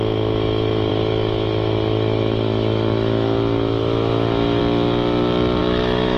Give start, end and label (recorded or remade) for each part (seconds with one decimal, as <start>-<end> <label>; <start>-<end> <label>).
0.0-0.9 recorded; 0.9-4.6 remade; 4.6-5.6 recorded; 5.6-6.2 remade